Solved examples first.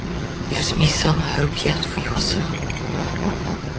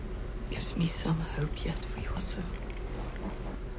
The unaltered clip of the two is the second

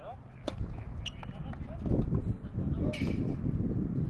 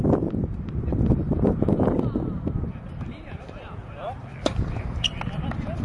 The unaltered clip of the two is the first